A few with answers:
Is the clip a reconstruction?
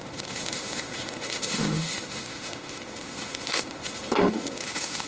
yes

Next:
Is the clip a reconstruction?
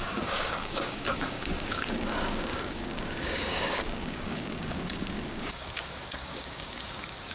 yes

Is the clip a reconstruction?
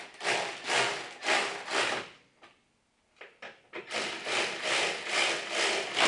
no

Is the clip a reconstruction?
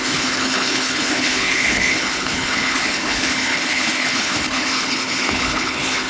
yes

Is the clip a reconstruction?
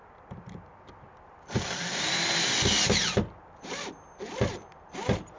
no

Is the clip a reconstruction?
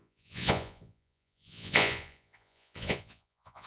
yes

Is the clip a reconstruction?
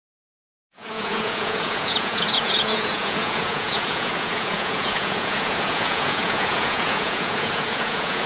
yes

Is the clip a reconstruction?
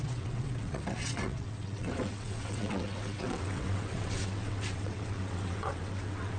yes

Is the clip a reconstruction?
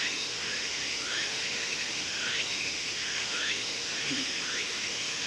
yes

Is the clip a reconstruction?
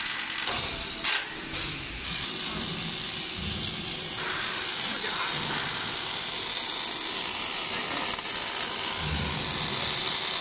no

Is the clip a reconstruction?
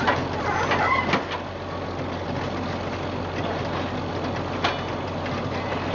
no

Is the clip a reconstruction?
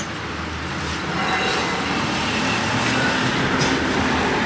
no